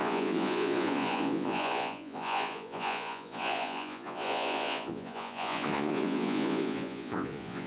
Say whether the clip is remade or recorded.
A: remade